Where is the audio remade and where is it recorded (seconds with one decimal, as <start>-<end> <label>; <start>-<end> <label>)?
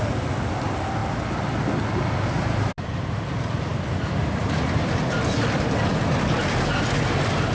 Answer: 0.0-7.5 recorded